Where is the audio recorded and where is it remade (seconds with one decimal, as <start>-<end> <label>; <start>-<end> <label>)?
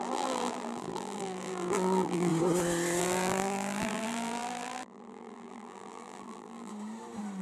0.0-2.3 remade; 2.3-3.0 recorded; 3.0-6.7 remade; 6.7-7.4 recorded